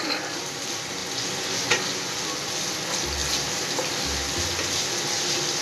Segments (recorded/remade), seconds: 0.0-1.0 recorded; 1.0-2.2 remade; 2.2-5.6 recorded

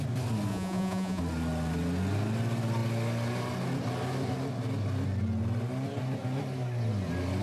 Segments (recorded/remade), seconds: 0.0-0.5 recorded; 0.5-1.2 remade; 1.2-7.4 recorded

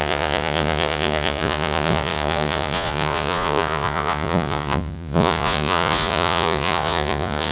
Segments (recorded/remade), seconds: 0.0-7.5 remade

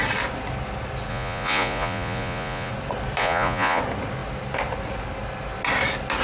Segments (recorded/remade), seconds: 0.0-1.1 recorded; 1.1-2.7 remade; 2.7-3.2 recorded; 3.2-3.8 remade; 3.8-6.2 recorded